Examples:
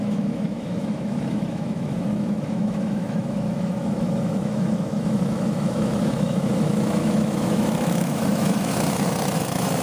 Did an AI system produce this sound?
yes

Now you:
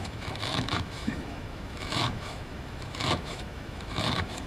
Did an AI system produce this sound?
yes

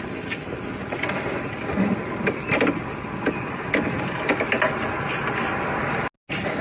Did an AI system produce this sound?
no